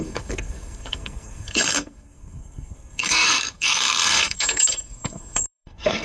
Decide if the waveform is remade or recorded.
remade